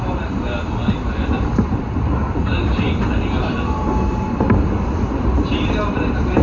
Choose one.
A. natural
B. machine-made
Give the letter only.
B